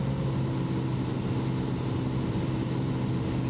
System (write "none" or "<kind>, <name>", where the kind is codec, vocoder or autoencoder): none